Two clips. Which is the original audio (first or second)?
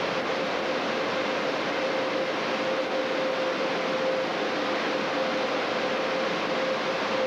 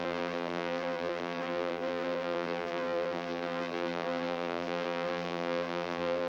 first